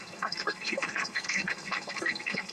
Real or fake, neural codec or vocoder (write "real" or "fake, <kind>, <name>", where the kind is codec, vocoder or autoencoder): fake, codec, SNAC